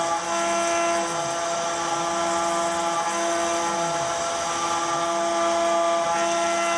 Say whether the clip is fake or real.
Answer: real